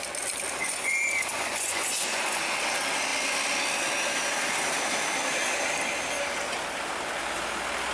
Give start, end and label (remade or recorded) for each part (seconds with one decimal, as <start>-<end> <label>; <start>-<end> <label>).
0.0-0.6 recorded; 0.6-2.4 remade; 2.4-7.9 recorded

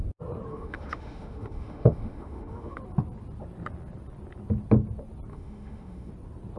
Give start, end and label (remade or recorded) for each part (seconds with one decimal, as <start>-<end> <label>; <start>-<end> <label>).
0.0-0.5 recorded; 0.5-2.8 remade; 2.8-5.3 recorded; 5.3-6.1 remade; 6.1-6.6 recorded

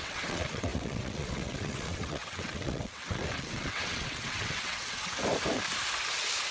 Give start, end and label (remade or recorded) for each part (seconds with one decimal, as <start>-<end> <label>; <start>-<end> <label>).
0.0-5.2 remade; 5.2-6.5 recorded

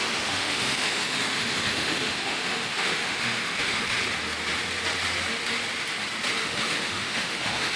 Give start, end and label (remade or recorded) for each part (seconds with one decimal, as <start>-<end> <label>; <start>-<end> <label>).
0.0-4.0 remade; 4.0-6.4 recorded; 6.4-7.8 remade

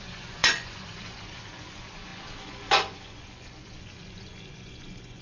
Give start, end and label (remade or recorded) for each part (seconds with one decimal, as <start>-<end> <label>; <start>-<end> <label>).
0.0-5.2 remade